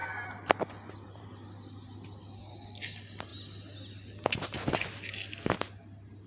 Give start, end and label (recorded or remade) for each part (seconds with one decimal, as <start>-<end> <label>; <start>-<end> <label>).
0.0-6.3 recorded